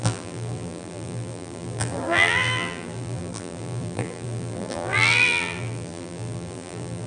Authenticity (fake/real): fake